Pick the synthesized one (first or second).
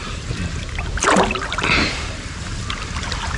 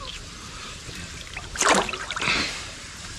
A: second